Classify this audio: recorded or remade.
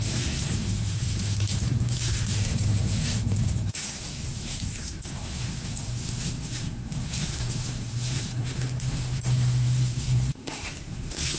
remade